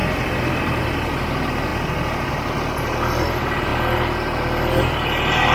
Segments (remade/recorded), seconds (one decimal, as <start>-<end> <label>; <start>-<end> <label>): 0.0-5.5 recorded